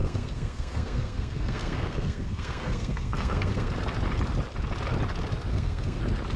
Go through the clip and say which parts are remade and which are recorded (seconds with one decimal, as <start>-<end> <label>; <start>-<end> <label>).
0.0-3.7 remade; 3.7-5.5 recorded; 5.5-6.0 remade; 6.0-6.4 recorded